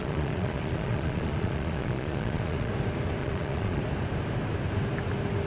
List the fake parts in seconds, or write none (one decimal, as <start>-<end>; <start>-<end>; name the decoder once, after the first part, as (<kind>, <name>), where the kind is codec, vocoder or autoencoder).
0.0-2.7 (vocoder, Vocos); 3.2-3.8